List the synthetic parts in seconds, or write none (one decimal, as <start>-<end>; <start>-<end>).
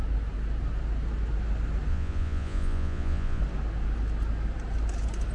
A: 1.9-3.4